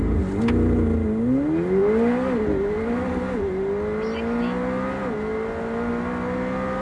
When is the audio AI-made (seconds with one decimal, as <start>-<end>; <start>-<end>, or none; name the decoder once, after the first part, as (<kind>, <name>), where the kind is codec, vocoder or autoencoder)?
none